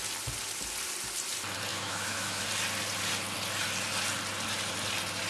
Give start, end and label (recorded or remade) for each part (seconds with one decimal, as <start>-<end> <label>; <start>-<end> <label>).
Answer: 0.0-1.7 recorded; 1.7-2.4 remade; 2.4-5.3 recorded